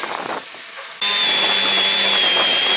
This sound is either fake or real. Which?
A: real